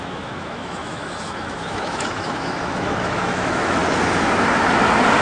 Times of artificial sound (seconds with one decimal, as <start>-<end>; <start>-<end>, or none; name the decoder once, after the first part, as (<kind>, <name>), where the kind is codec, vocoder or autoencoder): 0.0-3.8 (autoencoder, DAC-VAE)